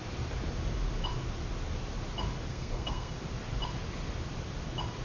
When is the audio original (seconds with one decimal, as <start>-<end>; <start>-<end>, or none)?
0.0-2.5; 3.2-5.0